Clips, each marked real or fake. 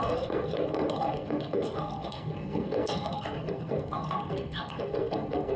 fake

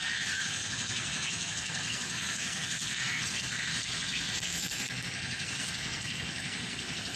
fake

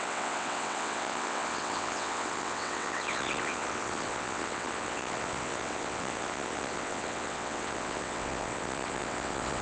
fake